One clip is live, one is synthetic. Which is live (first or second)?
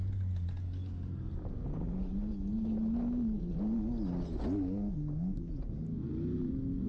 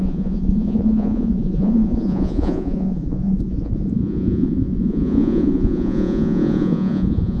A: first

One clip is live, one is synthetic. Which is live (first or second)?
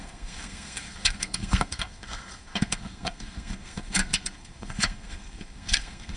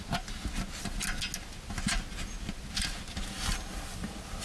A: second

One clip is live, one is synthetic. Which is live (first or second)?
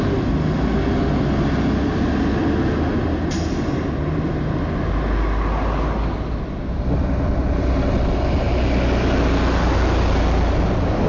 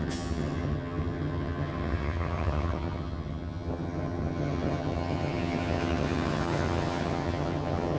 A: first